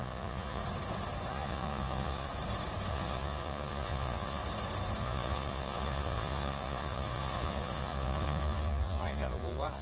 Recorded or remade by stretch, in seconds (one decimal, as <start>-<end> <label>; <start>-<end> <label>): 0.0-0.6 remade; 0.6-1.3 recorded; 1.3-2.3 remade; 2.3-2.9 recorded; 2.9-4.4 remade; 4.4-5.0 recorded; 5.0-9.8 remade